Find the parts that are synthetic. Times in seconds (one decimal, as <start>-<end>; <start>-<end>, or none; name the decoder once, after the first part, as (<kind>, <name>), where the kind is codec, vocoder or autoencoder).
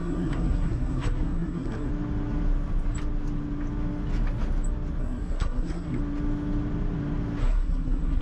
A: 0.0-1.9 (codec, SNAC); 5.0-6.0; 7.4-8.2